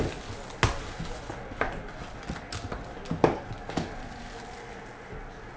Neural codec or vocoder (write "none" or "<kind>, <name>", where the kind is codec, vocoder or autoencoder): none